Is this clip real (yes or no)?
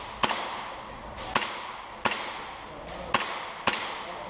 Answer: yes